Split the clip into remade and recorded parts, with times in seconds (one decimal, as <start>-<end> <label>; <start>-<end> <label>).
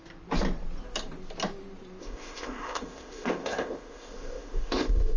0.0-2.0 recorded; 2.0-5.2 remade